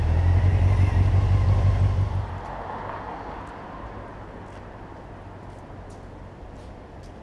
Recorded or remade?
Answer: recorded